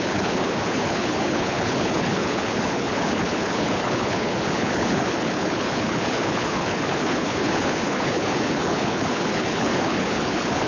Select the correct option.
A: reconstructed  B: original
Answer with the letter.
A